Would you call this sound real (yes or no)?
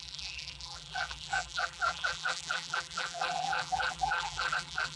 no